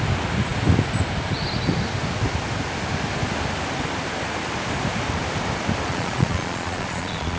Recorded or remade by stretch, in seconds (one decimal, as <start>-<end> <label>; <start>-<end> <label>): 0.0-5.9 recorded; 5.9-7.4 remade

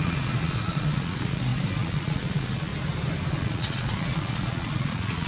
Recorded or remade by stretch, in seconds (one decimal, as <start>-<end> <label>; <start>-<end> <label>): 0.0-2.7 remade; 2.7-3.3 recorded; 3.3-5.3 remade

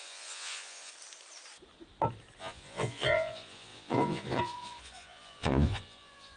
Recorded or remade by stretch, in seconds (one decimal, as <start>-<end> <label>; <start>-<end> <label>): 0.0-0.9 remade; 0.9-2.4 recorded; 2.4-6.4 remade

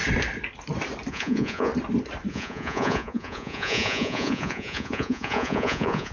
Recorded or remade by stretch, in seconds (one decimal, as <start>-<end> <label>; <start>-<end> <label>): 0.0-1.1 recorded; 1.1-1.7 remade; 1.7-2.3 recorded; 2.3-6.1 remade

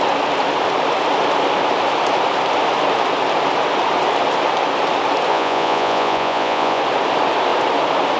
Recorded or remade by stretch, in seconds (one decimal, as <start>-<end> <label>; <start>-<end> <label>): 0.0-5.3 recorded; 5.3-6.8 remade; 6.8-8.2 recorded